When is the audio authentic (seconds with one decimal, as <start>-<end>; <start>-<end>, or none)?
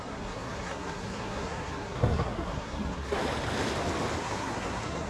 3.2-4.2